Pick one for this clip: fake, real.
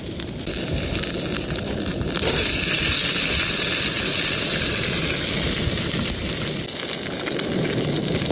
real